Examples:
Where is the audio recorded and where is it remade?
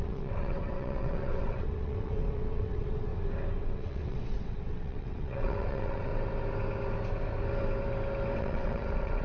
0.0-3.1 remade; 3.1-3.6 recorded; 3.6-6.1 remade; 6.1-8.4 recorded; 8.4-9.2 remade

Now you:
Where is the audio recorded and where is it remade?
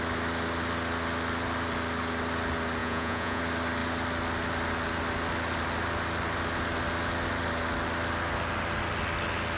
0.0-2.8 recorded; 2.8-3.4 remade; 3.4-9.6 recorded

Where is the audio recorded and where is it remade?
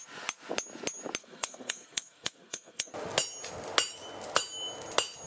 0.0-1.2 recorded; 1.2-2.9 remade; 2.9-5.3 recorded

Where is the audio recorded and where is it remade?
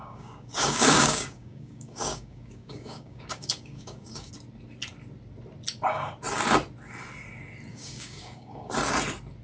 0.0-4.3 remade; 4.3-7.7 recorded; 7.7-8.7 remade; 8.7-9.4 recorded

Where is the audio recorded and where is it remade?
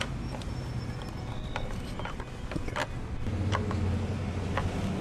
0.0-5.0 recorded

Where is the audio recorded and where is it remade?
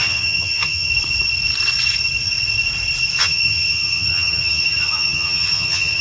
0.0-0.9 remade; 0.9-3.2 recorded; 3.2-6.0 remade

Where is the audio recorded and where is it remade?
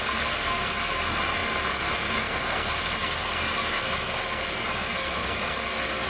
0.0-6.1 remade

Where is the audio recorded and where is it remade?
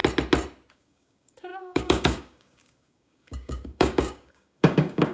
0.0-0.7 recorded; 0.7-5.1 remade